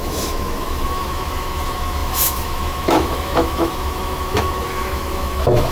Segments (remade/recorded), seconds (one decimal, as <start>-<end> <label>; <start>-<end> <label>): 0.0-5.7 remade